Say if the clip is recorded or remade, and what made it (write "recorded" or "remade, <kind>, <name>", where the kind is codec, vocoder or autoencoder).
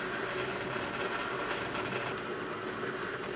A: recorded